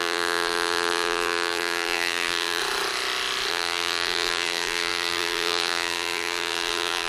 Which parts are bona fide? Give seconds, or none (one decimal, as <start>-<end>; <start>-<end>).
2.6-3.5